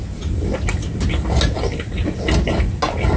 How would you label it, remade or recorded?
recorded